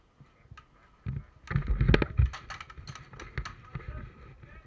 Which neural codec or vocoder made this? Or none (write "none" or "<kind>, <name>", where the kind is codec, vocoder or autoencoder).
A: none